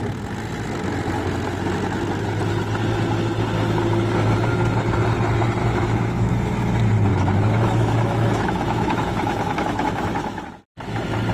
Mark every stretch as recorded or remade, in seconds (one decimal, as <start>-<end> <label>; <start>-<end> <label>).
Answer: 0.0-5.6 recorded; 5.6-6.3 remade; 6.3-7.1 recorded; 7.1-10.5 remade; 10.5-11.3 recorded